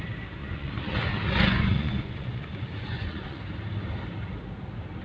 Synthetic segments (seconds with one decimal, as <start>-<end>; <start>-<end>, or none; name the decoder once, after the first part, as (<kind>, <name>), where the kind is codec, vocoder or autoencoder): 0.4-3.4 (vocoder, Vocos)